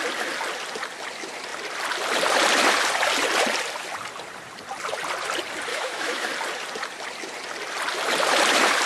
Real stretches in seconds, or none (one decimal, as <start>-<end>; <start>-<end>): 0.0-5.7; 6.3-8.9